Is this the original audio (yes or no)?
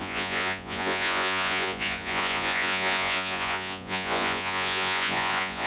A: no